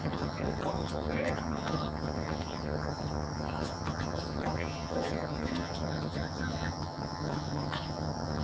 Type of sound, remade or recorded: remade